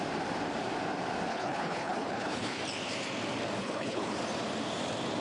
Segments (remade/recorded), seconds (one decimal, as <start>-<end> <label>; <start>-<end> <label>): 0.0-1.3 recorded; 1.3-2.6 remade; 2.6-3.6 recorded; 3.6-4.1 remade; 4.1-5.2 recorded